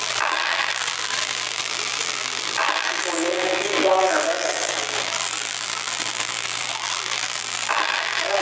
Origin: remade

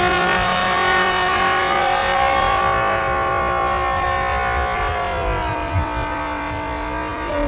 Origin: recorded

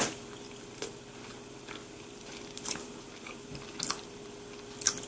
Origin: recorded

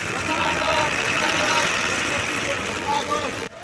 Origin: remade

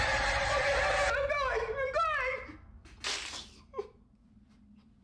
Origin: recorded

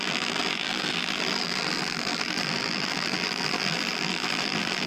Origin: remade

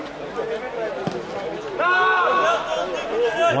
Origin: recorded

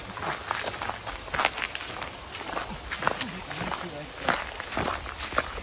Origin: recorded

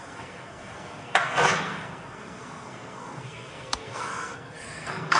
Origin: remade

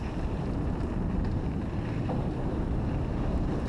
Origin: recorded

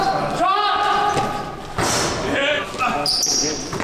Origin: recorded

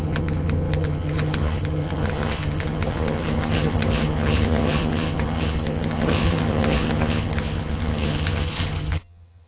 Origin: remade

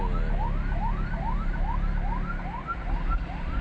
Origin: recorded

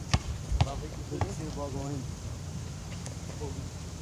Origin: remade